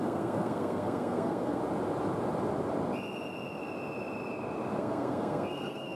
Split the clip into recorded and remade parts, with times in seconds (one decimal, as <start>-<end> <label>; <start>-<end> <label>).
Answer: 0.0-1.6 remade; 1.6-4.8 recorded; 4.8-6.0 remade